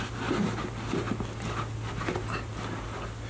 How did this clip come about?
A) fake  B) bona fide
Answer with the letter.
B